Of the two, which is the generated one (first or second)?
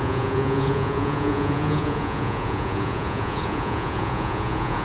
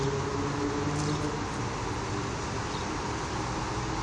first